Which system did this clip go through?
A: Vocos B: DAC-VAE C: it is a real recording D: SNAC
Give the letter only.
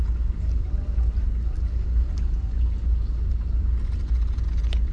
C